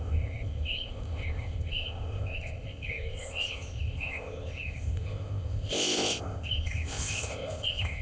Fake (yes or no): yes